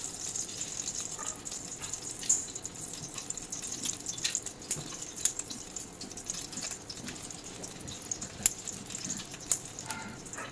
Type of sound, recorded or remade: recorded